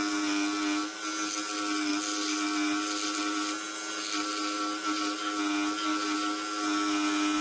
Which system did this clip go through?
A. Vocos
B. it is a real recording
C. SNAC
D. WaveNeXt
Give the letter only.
B